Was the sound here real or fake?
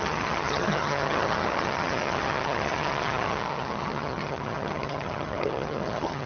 fake